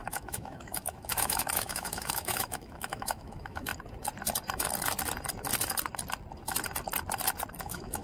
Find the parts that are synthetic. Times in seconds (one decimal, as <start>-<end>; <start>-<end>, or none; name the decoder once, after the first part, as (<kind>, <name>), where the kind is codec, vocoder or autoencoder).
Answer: 0.0-3.7 (autoencoder, DAC-VAE); 7.6-8.0